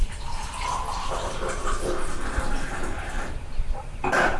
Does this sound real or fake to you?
fake